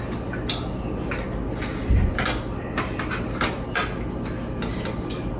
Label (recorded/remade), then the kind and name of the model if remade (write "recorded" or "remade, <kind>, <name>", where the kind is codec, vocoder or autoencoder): recorded